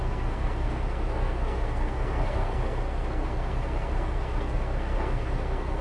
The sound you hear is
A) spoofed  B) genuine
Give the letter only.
A